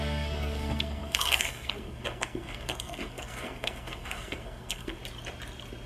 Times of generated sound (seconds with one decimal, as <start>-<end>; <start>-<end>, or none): 0.0-5.0